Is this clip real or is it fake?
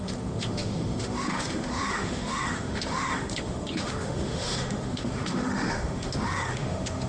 fake